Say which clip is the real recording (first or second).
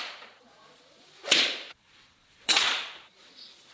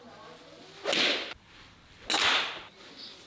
second